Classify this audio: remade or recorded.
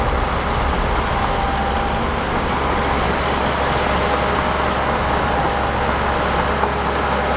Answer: recorded